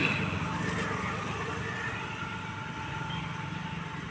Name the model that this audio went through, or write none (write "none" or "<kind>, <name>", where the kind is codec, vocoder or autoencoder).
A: none